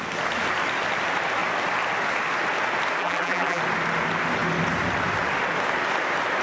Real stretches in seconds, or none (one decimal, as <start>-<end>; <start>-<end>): 0.0-3.0; 3.6-6.4